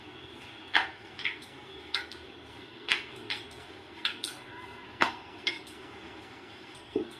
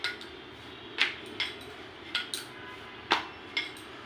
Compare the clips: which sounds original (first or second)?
second